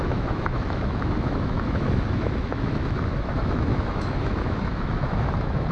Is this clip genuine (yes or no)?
no